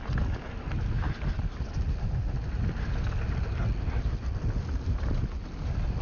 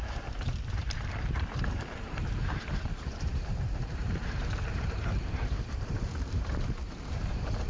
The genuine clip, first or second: first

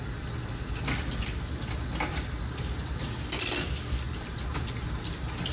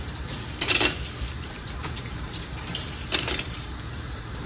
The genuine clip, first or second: first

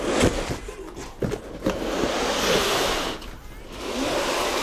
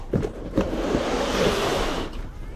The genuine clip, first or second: first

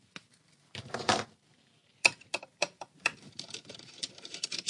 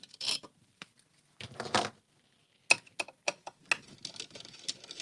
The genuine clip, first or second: second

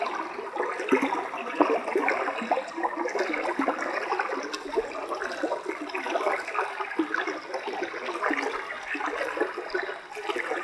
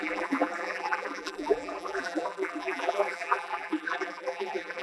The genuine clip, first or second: first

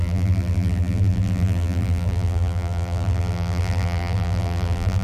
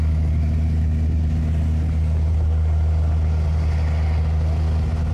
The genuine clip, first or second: second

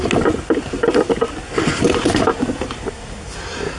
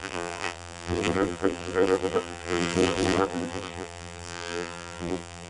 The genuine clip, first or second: first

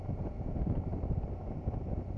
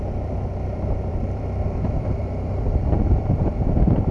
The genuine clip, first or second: first